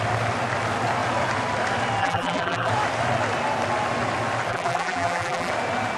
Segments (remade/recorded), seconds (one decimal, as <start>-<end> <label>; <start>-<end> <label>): 0.0-2.0 recorded; 2.0-2.7 remade; 2.7-4.5 recorded; 4.5-5.5 remade; 5.5-6.0 recorded